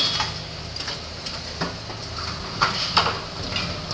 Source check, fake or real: real